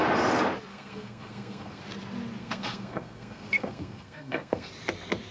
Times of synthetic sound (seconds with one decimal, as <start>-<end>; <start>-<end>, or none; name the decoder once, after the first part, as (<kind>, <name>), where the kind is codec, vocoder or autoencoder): 0.7-1.8 (codec, SNAC); 2.4-4.7